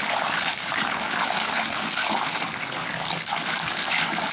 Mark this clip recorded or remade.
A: remade